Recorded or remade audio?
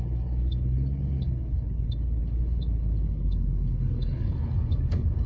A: remade